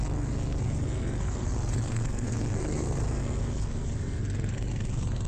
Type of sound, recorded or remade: remade